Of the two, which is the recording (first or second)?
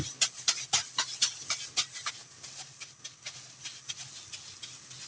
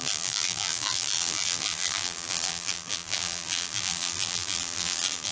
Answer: first